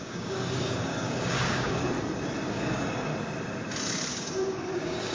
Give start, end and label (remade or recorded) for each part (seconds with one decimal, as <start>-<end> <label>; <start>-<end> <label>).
0.0-1.8 remade; 1.8-2.5 recorded; 2.5-3.1 remade; 3.1-4.1 recorded; 4.1-5.1 remade